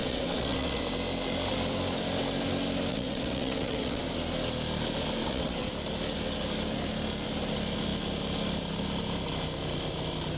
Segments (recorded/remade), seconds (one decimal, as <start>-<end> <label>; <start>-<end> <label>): 0.0-0.8 remade; 0.8-2.9 recorded; 2.9-4.0 remade; 4.0-5.2 recorded; 5.2-5.7 remade; 5.7-10.4 recorded